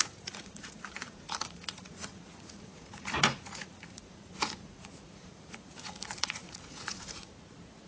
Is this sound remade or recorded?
remade